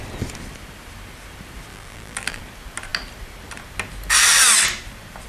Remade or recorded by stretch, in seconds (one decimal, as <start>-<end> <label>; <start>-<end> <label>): 0.0-1.7 recorded; 1.7-2.4 remade; 2.4-5.3 recorded